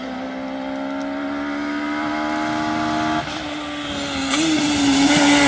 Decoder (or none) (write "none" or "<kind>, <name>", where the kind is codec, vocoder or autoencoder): none